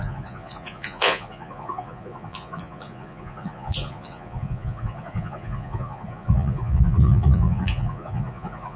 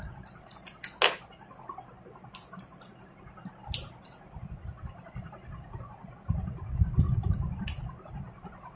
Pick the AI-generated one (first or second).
first